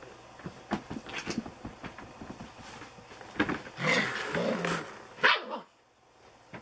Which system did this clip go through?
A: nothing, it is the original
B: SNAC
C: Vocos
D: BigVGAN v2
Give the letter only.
A